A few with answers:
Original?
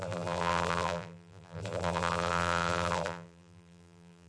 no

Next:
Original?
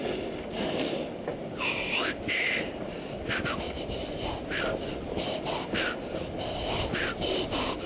yes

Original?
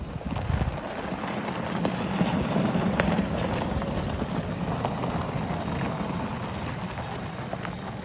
yes